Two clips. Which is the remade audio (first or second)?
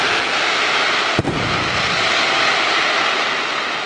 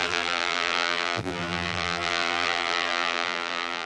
second